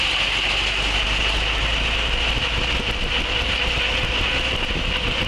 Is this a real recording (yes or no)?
yes